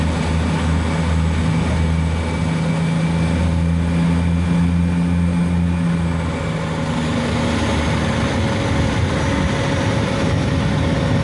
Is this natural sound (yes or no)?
yes